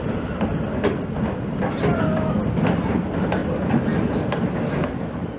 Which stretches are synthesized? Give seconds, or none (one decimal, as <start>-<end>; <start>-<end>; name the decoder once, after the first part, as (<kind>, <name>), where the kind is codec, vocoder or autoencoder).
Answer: none